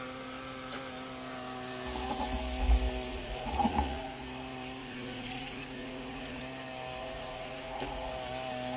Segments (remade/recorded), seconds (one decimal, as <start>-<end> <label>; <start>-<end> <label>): 0.0-3.1 recorded; 3.1-4.2 remade; 4.2-4.8 recorded; 4.8-6.4 remade; 6.4-7.0 recorded; 7.0-8.1 remade; 8.1-8.8 recorded